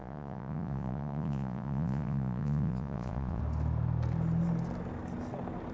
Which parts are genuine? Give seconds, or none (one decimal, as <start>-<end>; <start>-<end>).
3.4-5.7